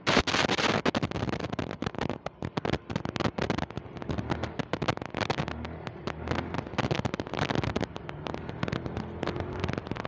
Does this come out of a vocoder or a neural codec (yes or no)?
no